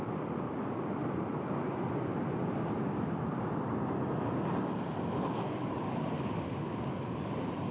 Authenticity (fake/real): real